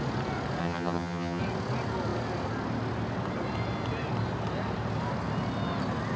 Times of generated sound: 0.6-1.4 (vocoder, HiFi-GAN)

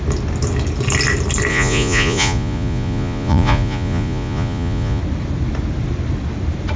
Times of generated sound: 1.5-5.0 (vocoder, Vocos)

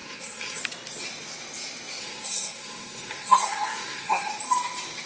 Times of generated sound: 0.0-0.6 (codec, SNAC); 2.0-4.3

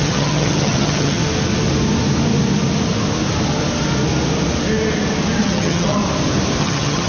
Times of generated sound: 0.0-1.2 (vocoder, HiFi-GAN); 5.4-6.0; 6.6-7.1

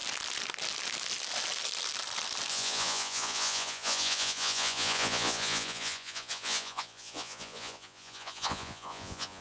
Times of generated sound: 2.5-9.4 (vocoder, Vocos)

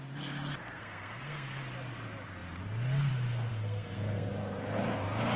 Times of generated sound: 0.6-1.6 (codec, SNAC); 3.5-4.3